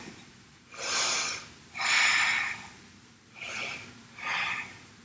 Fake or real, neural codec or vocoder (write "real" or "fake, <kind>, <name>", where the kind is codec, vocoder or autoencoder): fake, vocoder, BigVGAN v2